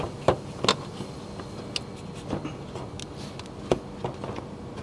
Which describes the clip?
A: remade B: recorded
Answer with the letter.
B